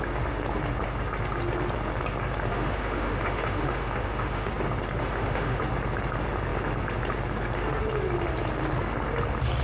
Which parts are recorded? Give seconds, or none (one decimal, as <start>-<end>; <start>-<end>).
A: 0.0-2.5; 4.5-5.0; 5.6-9.6